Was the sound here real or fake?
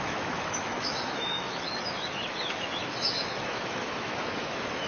fake